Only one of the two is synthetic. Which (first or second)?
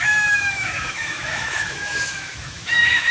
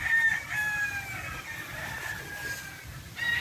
first